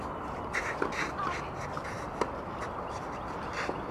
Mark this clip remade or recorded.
recorded